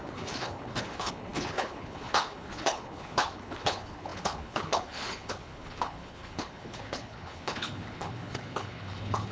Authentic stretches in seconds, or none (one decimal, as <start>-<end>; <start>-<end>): none